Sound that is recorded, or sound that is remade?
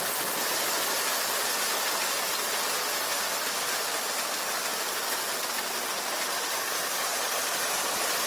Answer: recorded